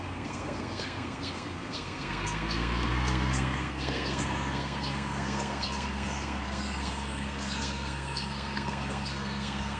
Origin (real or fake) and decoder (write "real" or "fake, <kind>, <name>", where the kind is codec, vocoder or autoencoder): fake, codec, SNAC